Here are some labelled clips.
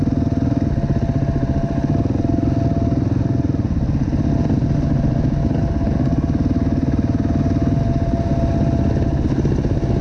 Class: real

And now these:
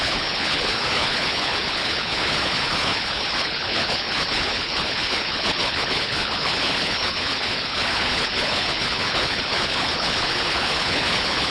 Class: fake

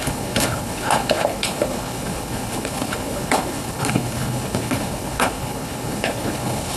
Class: fake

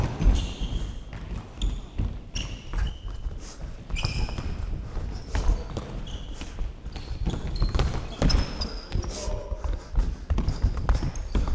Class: real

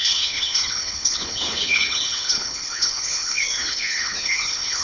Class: fake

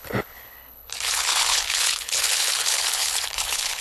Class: fake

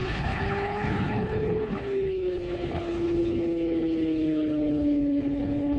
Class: fake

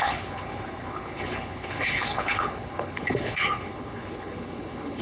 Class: fake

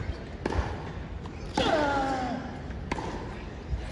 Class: real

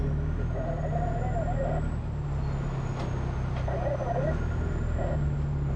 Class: real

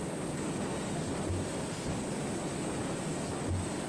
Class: real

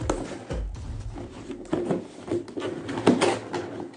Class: real